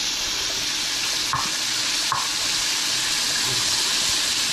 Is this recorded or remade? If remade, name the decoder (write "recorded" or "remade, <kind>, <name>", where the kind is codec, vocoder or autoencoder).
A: recorded